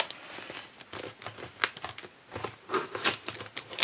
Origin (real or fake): real